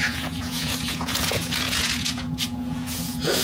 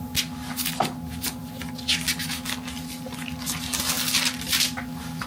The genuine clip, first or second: second